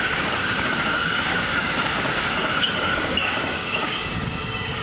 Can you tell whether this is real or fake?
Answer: fake